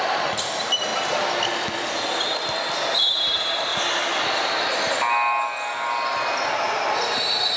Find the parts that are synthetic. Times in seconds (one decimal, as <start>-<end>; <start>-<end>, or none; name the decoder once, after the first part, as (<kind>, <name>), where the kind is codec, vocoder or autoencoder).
0.0-0.9 (vocoder, BigVGAN v2); 2.9-3.7; 7.0-7.6